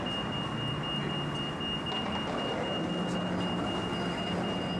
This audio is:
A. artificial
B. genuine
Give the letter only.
B